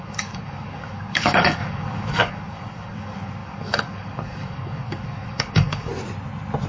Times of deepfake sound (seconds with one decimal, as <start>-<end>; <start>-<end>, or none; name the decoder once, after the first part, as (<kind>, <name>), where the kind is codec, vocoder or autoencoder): 0.0-5.9 (codec, DAC)

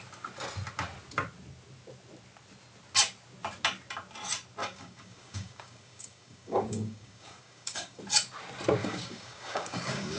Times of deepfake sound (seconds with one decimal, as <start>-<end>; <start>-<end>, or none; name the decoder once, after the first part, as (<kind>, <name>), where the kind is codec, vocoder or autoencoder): 4.6-8.0 (codec, DAC); 8.8-10.2

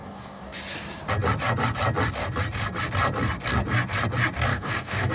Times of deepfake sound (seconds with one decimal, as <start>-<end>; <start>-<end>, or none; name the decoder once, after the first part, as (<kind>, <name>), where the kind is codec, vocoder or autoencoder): 0.0-0.6 (codec, DAC); 4.5-5.1